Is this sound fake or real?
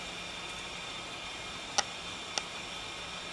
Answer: real